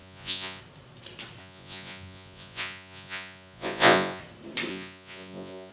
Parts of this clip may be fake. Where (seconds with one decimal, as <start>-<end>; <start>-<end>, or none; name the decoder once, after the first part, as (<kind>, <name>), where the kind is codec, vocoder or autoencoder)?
0.0-0.6 (vocoder, Vocos); 1.4-4.2; 4.7-5.7